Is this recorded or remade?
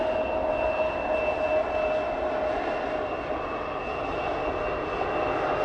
recorded